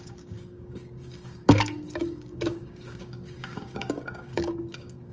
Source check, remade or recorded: remade